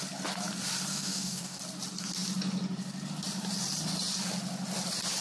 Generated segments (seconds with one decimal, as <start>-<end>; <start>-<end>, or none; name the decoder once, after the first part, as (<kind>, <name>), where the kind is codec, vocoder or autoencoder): 0.9-1.6 (codec, DAC)